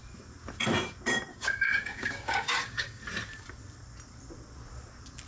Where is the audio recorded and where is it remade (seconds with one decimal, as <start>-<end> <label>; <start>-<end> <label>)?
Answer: 0.0-1.3 recorded; 1.3-3.0 remade; 3.0-5.3 recorded